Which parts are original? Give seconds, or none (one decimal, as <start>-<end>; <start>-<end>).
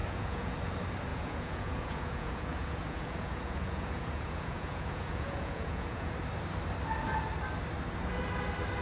0.5-1.1; 6.1-8.8